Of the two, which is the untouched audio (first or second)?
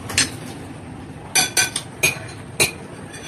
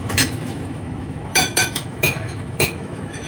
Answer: first